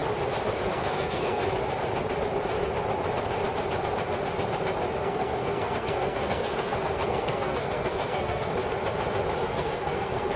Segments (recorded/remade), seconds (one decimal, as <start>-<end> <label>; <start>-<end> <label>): 0.0-0.7 recorded; 0.7-1.4 remade; 1.4-5.0 recorded; 5.0-8.5 remade; 8.5-9.4 recorded; 9.4-10.4 remade